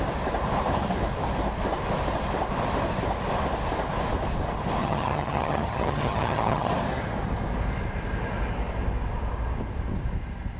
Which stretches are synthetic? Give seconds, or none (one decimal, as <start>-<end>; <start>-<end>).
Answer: 4.8-6.7